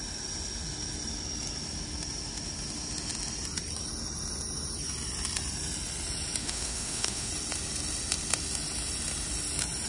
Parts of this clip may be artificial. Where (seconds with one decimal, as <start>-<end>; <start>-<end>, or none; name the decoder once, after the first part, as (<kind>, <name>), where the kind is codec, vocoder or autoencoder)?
6.4-7.3 (autoencoder, DAC-VAE)